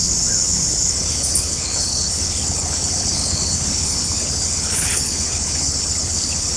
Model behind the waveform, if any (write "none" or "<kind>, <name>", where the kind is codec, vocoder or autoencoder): codec, HILCodec